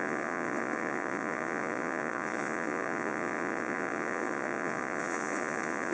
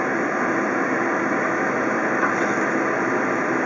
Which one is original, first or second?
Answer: second